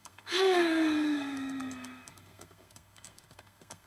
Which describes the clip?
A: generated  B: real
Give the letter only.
A